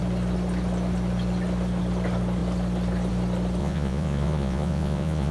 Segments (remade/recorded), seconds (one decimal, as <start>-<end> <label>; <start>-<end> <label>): 0.0-3.6 recorded; 3.6-5.3 remade